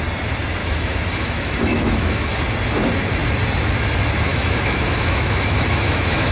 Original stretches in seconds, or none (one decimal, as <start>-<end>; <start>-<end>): 0.0-0.6; 2.4-4.3